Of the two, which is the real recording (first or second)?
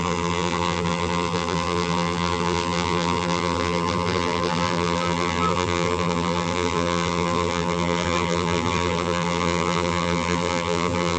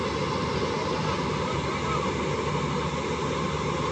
second